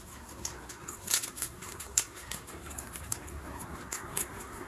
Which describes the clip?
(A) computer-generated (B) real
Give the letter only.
A